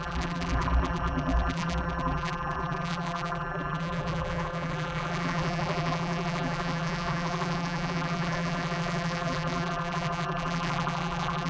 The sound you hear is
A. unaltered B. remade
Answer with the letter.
B